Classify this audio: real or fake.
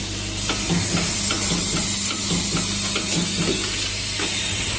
real